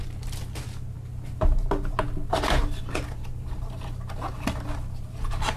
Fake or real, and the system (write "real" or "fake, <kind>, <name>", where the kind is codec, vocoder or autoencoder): real